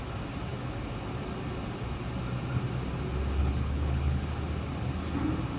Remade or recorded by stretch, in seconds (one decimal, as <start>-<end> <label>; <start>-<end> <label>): 0.0-3.4 recorded; 3.4-4.2 remade; 4.2-5.6 recorded